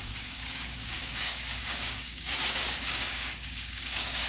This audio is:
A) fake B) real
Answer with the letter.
A